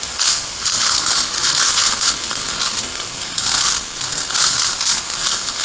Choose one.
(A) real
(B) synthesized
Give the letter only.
B